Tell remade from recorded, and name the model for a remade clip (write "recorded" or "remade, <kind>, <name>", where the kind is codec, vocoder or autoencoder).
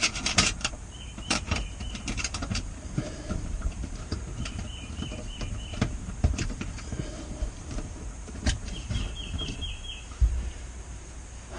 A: remade, vocoder, BigVGAN v2